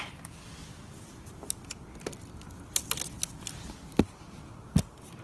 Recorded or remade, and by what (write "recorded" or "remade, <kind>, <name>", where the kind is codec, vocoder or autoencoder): recorded